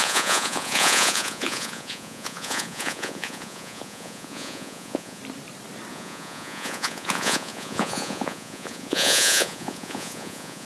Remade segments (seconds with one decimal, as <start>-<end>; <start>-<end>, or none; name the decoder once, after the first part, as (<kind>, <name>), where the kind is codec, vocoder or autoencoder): 0.0-5.2 (vocoder, Vocos); 5.9-10.6